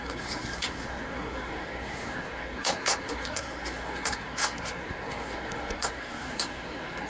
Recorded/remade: remade